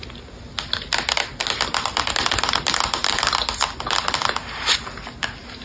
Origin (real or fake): real